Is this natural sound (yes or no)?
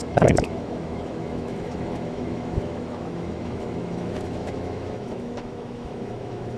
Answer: no